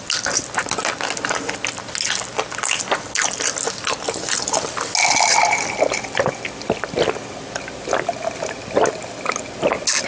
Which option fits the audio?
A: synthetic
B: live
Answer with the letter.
B